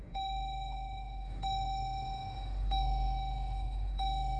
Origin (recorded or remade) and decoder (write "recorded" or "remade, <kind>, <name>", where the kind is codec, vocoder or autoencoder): remade, autoencoder, DAC-VAE